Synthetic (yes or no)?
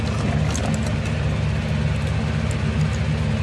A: no